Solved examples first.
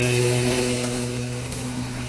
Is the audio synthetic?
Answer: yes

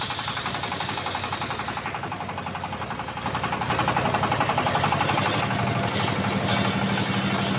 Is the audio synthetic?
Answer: no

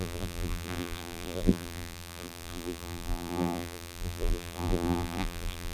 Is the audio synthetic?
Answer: yes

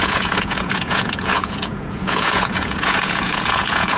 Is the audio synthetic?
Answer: yes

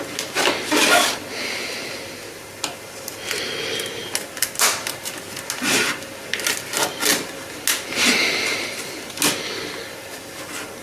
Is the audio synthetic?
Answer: no